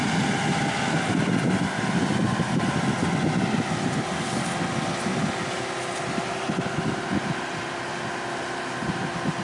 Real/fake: real